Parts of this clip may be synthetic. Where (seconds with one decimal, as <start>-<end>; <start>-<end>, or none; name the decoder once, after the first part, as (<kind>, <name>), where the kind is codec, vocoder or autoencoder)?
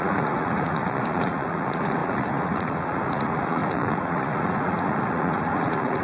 0.0-6.0 (vocoder, Vocos)